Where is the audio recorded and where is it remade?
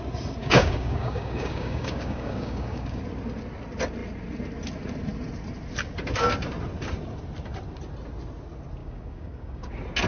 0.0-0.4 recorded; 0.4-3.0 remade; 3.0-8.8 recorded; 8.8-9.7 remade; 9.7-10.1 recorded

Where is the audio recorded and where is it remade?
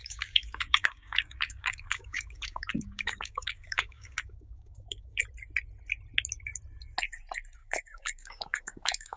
0.0-5.2 remade; 5.2-7.6 recorded; 7.6-9.2 remade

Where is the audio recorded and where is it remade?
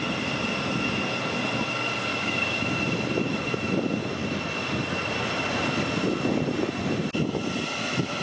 0.0-2.1 recorded; 2.1-2.6 remade; 2.6-8.2 recorded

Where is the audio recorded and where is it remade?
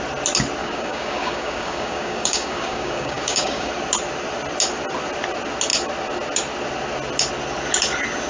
0.0-0.6 recorded; 0.6-3.7 remade; 3.7-8.3 recorded